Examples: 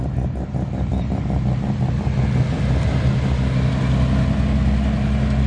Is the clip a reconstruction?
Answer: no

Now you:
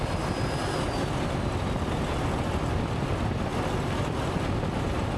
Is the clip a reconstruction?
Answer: no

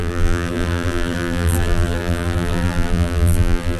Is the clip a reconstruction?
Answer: yes